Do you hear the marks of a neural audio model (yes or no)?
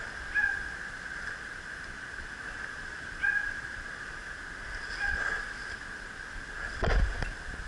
no